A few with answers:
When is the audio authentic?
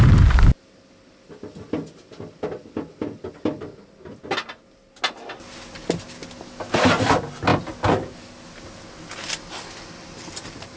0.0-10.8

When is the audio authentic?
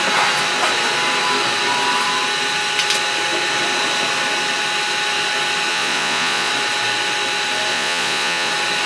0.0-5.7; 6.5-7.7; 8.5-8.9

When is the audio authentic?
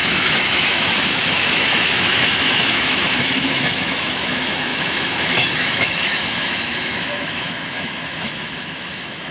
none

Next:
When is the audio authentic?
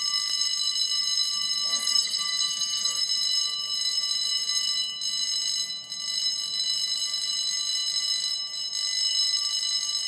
0.0-1.7; 3.0-10.1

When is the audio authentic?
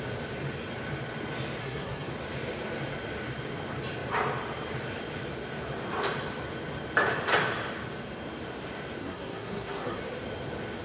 0.0-1.6; 2.1-9.0; 10.0-10.8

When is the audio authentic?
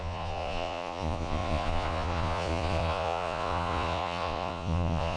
none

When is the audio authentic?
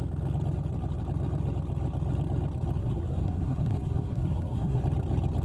0.0-2.8; 4.8-5.4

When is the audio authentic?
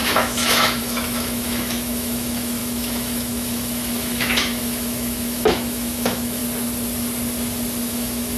6.4-7.9